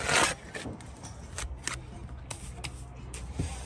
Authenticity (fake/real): real